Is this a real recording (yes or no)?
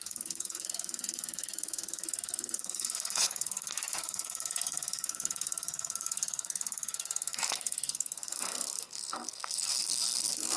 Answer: no